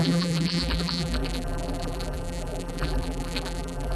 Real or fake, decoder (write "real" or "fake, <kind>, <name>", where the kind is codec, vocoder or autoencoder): fake, vocoder, BigVGAN v2